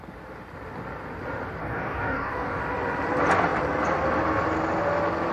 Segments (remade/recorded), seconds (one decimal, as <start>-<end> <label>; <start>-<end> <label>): 0.0-1.6 recorded; 1.6-2.6 remade; 2.6-5.3 recorded